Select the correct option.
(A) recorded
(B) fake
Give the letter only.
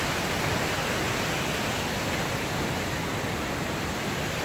A